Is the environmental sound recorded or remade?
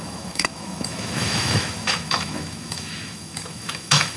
remade